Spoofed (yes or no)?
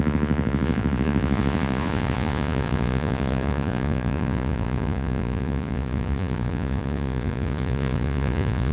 yes